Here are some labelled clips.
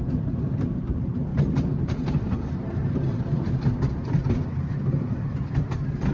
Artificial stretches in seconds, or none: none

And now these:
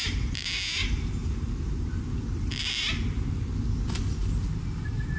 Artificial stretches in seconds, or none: 0.8-2.6

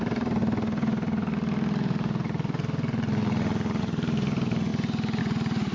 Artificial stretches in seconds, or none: 0.0-0.4; 3.8-4.7; 5.2-5.7